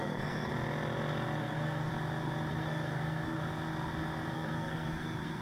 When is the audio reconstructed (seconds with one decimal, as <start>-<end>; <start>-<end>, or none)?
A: 0.0-0.5; 1.4-1.9; 2.5-3.4; 4.3-5.4